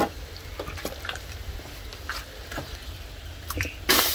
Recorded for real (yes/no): no